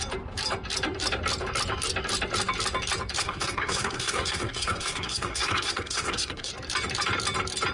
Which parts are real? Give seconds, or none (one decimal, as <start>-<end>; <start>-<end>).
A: 0.0-3.2; 6.5-7.7